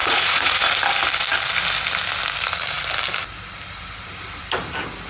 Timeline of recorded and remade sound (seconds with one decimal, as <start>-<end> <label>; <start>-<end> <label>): 0.0-0.7 remade; 0.7-5.1 recorded